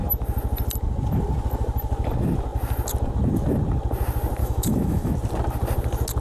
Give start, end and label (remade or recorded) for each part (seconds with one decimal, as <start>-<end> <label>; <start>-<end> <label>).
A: 0.0-4.4 recorded; 4.4-5.1 remade; 5.1-6.2 recorded